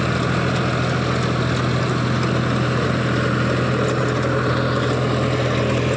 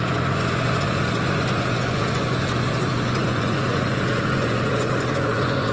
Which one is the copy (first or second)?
second